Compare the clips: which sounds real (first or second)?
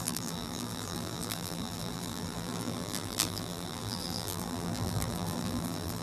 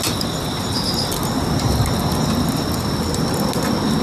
second